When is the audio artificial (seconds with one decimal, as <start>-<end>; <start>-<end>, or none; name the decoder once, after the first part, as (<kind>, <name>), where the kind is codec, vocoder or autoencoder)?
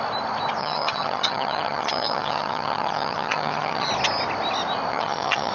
0.6-3.9 (vocoder, HiFi-GAN); 4.9-5.5